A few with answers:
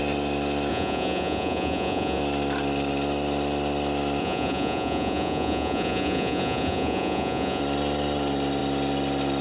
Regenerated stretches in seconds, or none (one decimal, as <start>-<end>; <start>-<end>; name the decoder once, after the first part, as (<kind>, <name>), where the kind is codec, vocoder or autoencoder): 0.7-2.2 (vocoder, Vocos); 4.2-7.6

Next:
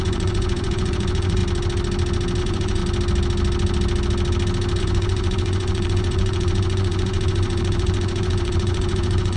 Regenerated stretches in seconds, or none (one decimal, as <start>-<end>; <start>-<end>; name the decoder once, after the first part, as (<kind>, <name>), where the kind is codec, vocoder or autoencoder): 0.0-1.4 (vocoder, Vocos); 2.4-2.8; 4.8-9.4

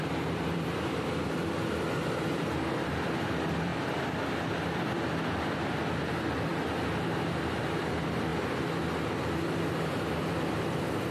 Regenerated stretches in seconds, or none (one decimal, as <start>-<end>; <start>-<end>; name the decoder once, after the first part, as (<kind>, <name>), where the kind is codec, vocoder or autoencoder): 0.0-3.7 (vocoder, BigVGAN v2); 4.5-6.5; 7.8-8.3; 9.6-11.1

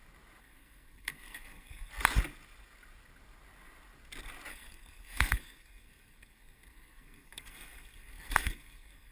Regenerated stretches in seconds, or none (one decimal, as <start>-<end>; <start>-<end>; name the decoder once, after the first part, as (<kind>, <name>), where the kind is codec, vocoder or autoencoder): 0.4-1.9 (codec, SNAC); 4.5-9.1

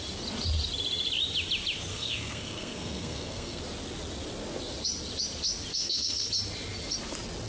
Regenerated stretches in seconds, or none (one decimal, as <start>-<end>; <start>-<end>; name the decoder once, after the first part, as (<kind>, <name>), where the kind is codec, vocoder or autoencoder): 1.9-3.6 (codec, SNAC); 5.7-6.3